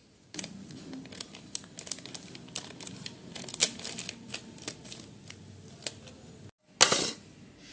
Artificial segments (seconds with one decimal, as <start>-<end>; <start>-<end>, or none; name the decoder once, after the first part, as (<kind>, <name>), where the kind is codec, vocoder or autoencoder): 0.0-0.8 (vocoder, Vocos)